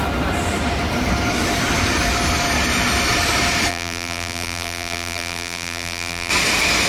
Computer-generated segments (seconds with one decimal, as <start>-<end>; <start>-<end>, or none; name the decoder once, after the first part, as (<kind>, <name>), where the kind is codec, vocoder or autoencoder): 3.7-6.3 (vocoder, BigVGAN v2)